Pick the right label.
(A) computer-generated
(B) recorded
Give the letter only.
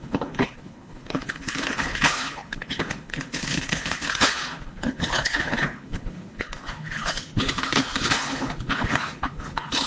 A